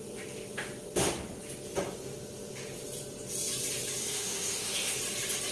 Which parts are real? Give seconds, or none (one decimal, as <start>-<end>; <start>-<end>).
0.0-4.0; 5.0-5.5